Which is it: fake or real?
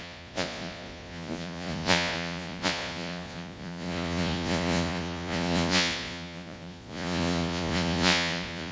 fake